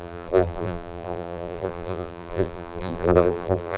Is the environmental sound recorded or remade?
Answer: remade